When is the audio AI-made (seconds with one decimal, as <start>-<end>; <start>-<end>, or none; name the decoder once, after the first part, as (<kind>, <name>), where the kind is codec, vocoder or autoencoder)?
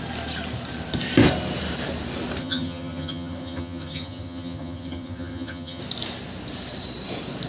2.4-5.8 (vocoder, HiFi-GAN)